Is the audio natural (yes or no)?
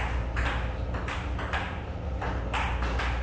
yes